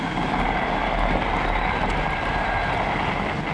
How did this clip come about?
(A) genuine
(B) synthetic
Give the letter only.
A